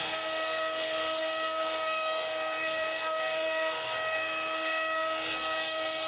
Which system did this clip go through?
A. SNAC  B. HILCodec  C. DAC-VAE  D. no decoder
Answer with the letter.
A